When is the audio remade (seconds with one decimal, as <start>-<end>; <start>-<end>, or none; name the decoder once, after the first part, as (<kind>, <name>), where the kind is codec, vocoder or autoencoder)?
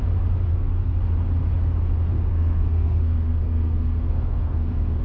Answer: 0.5-1.0 (codec, SNAC); 2.3-5.0